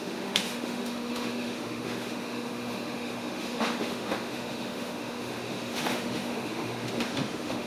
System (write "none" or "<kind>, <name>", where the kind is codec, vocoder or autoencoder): autoencoder, DAC-VAE